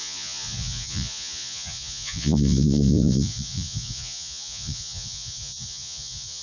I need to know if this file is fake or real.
fake